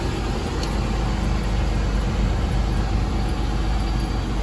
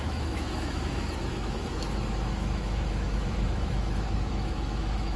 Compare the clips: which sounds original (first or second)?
first